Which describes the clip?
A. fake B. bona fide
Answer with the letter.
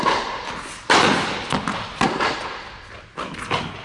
B